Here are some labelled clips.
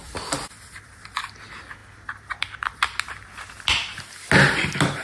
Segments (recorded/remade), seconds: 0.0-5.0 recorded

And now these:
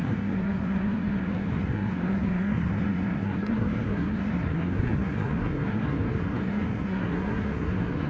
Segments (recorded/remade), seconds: 0.0-8.1 remade

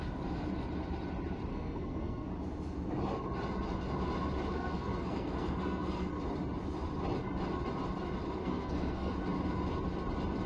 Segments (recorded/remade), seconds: 0.0-1.5 recorded; 1.5-2.3 remade; 2.3-4.5 recorded; 4.5-6.1 remade; 6.1-8.4 recorded; 8.4-9.1 remade; 9.1-10.5 recorded